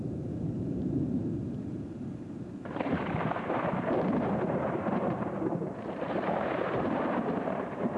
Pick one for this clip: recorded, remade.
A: remade